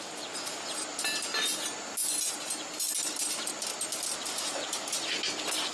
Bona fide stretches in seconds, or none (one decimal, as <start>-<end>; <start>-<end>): 0.0-5.7